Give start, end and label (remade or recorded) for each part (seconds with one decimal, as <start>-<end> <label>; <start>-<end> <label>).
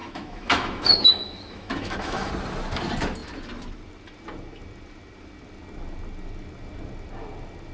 0.0-2.3 remade; 2.3-7.7 recorded